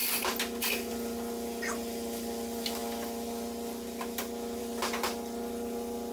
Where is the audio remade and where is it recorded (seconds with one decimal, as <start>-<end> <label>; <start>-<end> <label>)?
0.0-6.1 recorded